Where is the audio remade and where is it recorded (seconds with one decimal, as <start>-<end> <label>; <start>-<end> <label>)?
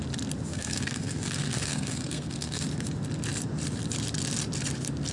0.0-0.5 recorded; 0.5-2.6 remade; 2.6-5.1 recorded